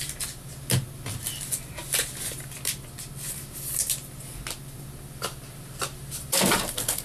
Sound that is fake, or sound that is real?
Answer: real